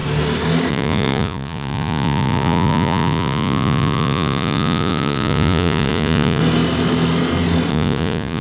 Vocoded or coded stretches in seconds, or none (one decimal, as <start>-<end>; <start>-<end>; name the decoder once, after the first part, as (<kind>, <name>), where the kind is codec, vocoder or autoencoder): 0.7-6.4 (vocoder, Vocos); 7.7-8.4